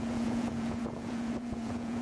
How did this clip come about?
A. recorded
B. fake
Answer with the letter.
B